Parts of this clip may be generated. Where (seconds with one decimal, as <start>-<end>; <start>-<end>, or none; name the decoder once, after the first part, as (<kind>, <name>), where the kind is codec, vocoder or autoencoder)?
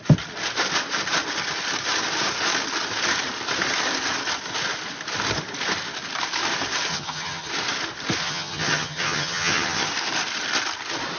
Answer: 6.9-7.5 (vocoder, HiFi-GAN); 8.2-9.9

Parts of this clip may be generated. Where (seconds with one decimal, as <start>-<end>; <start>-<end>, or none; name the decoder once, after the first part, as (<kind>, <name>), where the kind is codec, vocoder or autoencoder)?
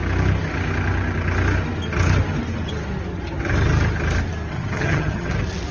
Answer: 4.5-5.3 (vocoder, HiFi-GAN)